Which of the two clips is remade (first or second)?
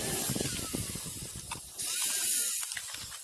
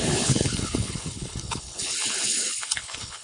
second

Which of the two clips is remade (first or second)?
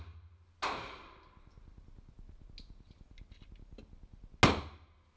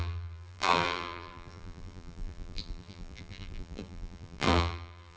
second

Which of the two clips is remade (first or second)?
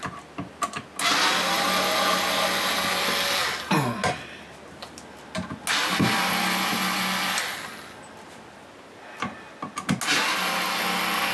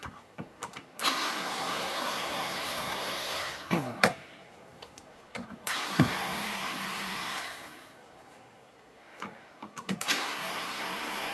second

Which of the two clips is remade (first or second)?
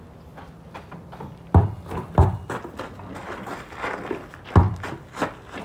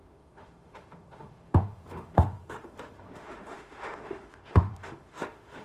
second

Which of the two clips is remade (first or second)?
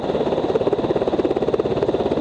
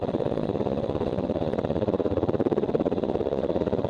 second